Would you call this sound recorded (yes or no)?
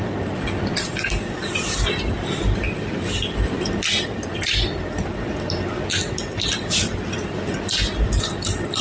yes